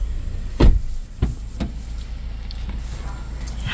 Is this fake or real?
real